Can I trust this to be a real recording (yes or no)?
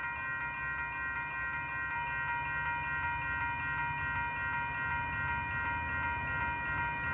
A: yes